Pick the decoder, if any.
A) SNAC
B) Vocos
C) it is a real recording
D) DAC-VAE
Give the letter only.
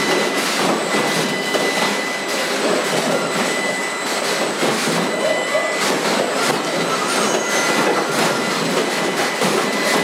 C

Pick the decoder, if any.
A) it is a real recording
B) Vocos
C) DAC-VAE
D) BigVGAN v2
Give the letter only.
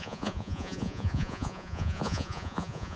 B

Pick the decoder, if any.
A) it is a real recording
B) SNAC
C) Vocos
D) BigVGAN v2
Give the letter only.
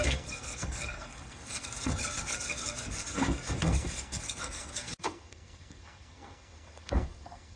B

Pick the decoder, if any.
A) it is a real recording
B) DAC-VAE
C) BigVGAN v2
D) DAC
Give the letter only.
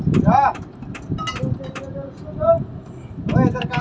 A